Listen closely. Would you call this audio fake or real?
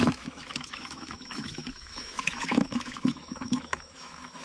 fake